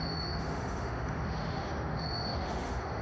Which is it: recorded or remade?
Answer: remade